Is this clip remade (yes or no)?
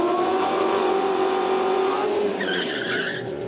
yes